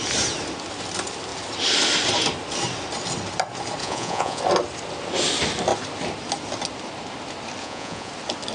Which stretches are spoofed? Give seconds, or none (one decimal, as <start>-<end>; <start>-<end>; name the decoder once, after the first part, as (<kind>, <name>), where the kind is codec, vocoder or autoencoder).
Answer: 3.8-4.4 (vocoder, Vocos); 7.6-8.1